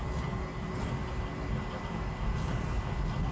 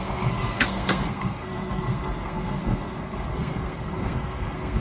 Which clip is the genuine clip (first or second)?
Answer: first